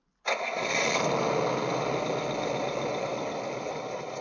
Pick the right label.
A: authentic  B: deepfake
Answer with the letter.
A